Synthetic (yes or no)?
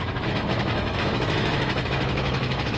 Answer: yes